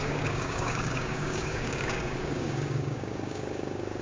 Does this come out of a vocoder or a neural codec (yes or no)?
yes